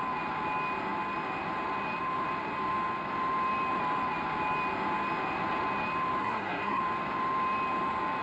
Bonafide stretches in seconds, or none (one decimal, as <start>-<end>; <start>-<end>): 0.0-6.2; 6.8-8.2